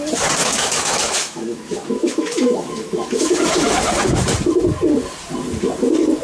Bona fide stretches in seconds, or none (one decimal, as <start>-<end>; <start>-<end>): 0.0-0.4; 3.8-6.2